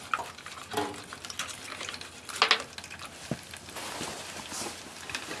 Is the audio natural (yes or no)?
yes